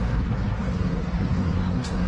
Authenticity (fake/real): fake